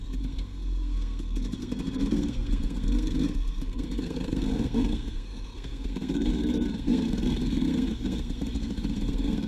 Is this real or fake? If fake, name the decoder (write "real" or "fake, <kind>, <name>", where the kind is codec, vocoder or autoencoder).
fake, codec, SNAC